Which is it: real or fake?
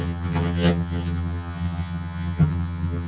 fake